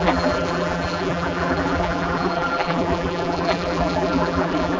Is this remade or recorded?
remade